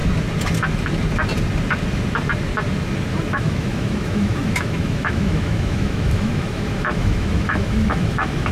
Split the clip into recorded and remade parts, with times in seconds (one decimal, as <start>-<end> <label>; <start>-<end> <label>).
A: 0.0-3.3 recorded; 3.3-8.5 remade